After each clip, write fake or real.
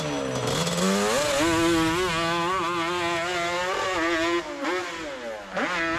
real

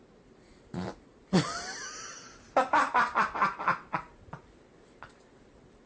real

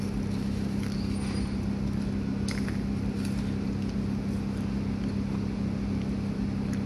real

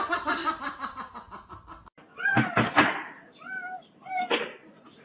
fake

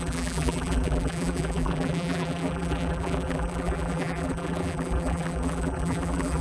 fake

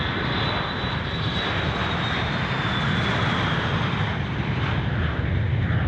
real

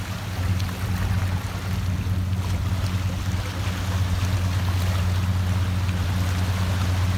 real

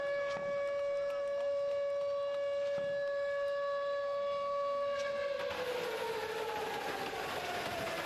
real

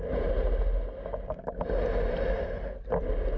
real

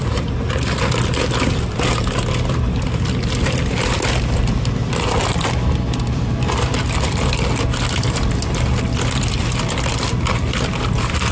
fake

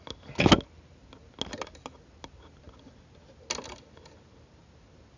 real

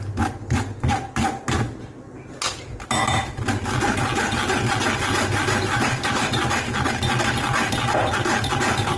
real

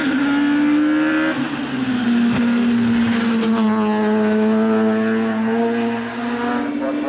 real